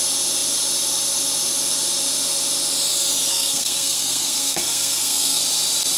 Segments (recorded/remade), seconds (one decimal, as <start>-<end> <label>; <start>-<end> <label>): 0.0-3.3 recorded; 3.3-5.4 remade; 5.4-6.0 recorded